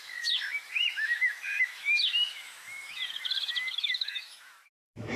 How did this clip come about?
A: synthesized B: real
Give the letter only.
A